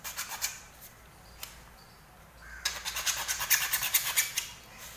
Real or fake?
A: real